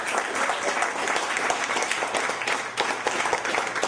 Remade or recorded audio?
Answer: recorded